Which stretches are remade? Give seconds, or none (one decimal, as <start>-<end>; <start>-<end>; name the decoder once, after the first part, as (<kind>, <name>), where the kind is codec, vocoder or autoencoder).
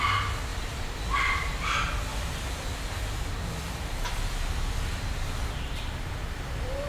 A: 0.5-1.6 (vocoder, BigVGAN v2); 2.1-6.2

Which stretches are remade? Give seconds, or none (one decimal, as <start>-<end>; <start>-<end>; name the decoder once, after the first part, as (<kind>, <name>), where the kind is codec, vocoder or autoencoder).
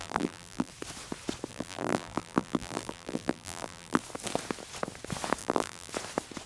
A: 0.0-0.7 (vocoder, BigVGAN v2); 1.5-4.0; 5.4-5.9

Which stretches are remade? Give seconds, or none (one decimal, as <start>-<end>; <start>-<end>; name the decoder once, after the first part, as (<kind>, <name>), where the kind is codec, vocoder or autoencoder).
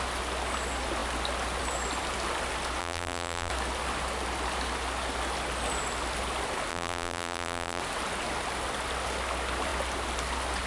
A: 2.8-3.5 (vocoder, BigVGAN v2); 6.7-7.8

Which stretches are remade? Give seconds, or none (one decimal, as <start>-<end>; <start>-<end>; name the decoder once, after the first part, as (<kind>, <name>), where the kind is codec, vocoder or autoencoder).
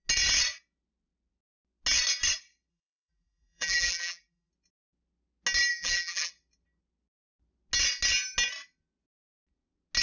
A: 2.7-4.5 (vocoder, BigVGAN v2); 5.7-6.3